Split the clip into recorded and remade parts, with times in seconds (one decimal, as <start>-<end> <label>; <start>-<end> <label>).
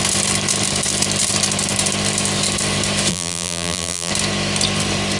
0.0-3.1 recorded; 3.1-4.1 remade; 4.1-5.2 recorded